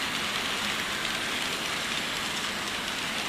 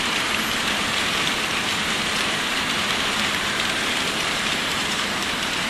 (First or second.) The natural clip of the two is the first